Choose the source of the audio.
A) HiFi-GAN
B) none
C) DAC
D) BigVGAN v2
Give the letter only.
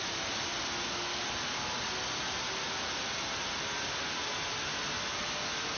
B